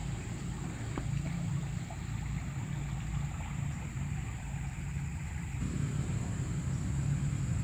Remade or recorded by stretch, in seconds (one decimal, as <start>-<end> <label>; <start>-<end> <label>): 0.0-3.1 recorded; 3.1-6.8 remade; 6.8-7.6 recorded